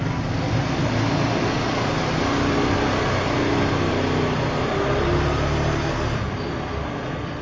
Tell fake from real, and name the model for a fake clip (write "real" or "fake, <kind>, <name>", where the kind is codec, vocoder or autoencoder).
real